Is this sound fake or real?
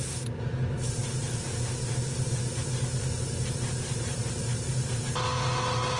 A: real